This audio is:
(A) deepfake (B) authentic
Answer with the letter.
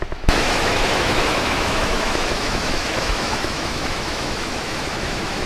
A